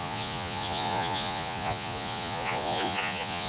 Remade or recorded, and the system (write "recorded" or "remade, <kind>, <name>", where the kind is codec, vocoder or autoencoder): remade, vocoder, Vocos